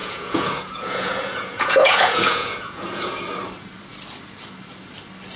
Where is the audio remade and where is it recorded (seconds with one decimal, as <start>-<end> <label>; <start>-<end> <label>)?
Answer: 0.0-3.2 remade; 3.2-5.4 recorded